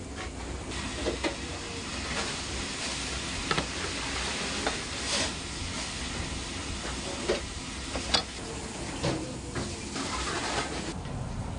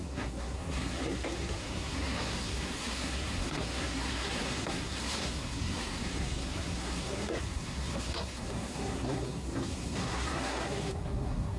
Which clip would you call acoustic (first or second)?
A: first